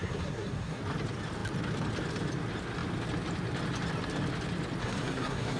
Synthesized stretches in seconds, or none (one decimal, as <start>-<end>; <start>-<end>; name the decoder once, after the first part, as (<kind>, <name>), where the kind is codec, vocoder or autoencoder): 0.0-0.8 (codec, SNAC); 4.8-5.6